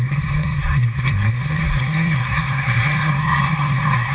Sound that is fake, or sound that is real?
fake